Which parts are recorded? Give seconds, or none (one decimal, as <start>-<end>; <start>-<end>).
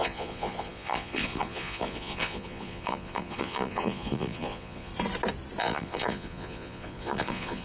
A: 4.9-5.6